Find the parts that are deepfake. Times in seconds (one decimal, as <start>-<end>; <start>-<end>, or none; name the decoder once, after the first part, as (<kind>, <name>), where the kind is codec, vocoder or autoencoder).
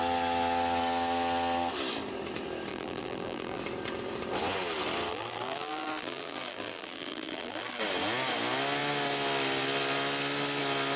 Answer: 2.7-3.6 (vocoder, BigVGAN v2); 5.1-7.8